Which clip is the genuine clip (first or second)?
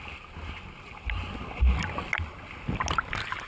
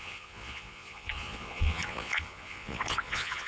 first